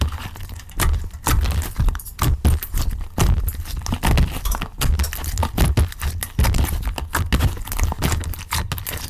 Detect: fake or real real